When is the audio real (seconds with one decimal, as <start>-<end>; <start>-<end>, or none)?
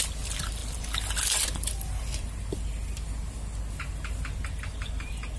0.0-5.4